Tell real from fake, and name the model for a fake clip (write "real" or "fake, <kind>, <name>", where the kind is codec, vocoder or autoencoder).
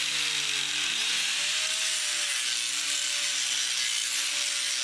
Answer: real